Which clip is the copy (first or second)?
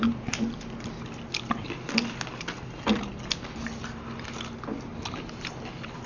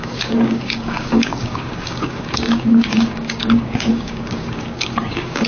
second